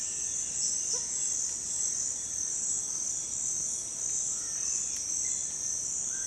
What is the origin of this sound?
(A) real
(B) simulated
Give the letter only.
A